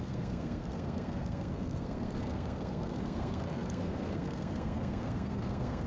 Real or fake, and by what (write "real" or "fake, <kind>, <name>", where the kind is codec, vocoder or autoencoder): fake, codec, SNAC